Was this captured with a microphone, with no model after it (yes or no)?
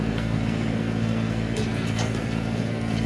no